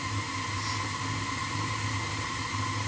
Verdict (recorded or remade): recorded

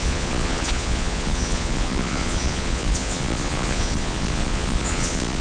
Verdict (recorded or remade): remade